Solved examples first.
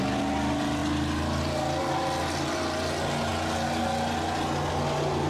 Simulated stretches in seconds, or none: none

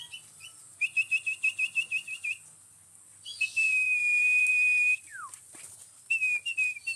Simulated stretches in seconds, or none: 3.1-4.5 (vocoder, BigVGAN v2)

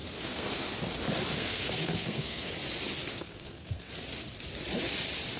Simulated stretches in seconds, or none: 0.0-0.7 (codec, SNAC); 1.3-2.5; 3.1-3.9

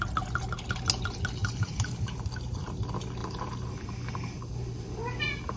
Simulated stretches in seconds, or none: 1.4-2.8 (vocoder, BigVGAN v2); 3.2-3.8